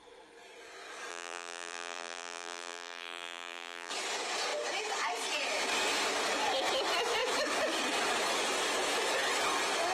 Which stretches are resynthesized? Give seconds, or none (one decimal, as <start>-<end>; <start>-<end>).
1.1-3.9